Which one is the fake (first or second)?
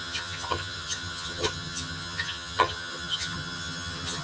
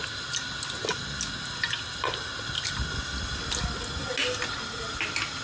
first